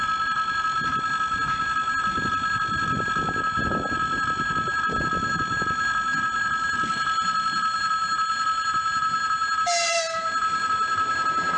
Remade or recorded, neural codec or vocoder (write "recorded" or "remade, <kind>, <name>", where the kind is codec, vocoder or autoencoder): recorded